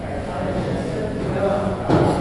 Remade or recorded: remade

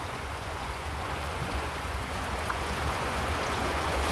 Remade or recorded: remade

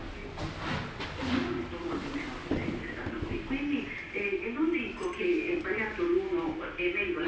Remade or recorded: recorded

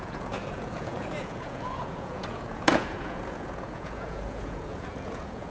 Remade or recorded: remade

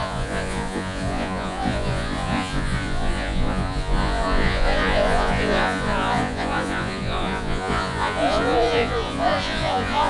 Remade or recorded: remade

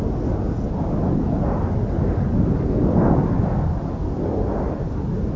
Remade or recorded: recorded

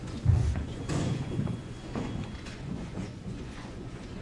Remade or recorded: remade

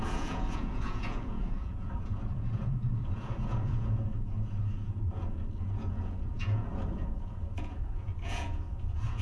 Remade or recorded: remade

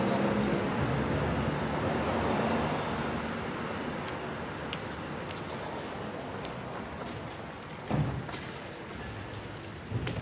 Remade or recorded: recorded